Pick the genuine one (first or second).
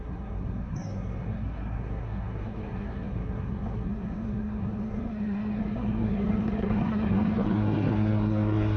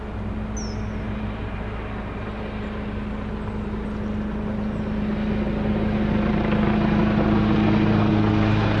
second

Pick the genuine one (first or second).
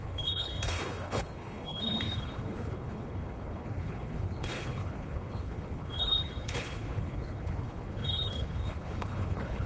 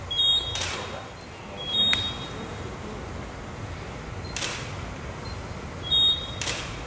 second